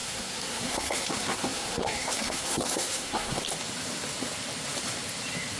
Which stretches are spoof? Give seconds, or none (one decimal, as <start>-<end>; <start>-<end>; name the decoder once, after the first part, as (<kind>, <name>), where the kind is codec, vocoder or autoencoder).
0.0-3.4 (codec, SNAC)

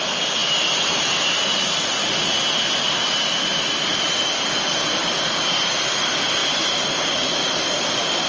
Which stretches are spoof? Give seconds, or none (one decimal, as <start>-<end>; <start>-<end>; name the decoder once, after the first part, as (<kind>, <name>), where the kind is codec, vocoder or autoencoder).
none